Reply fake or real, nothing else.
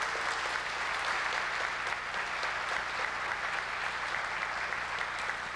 real